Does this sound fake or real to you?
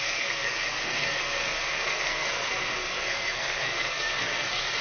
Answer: fake